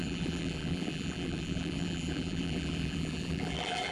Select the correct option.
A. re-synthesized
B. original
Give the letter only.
A